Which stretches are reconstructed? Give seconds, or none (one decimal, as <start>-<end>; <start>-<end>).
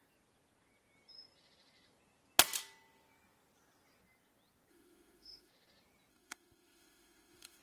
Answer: 4.7-5.5; 6.1-7.6